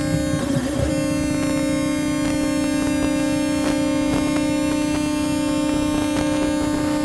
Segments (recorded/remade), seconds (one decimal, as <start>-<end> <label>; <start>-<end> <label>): 0.0-0.4 recorded; 0.4-0.9 remade; 0.9-7.0 recorded